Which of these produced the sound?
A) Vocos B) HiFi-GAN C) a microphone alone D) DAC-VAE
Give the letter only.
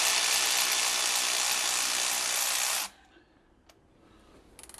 C